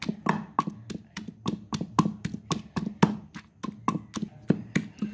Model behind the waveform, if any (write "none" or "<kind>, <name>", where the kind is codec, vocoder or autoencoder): none